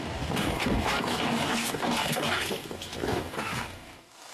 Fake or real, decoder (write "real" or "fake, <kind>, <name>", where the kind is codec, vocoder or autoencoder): fake, codec, DAC